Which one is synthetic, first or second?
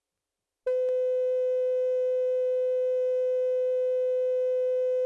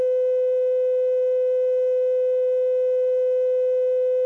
second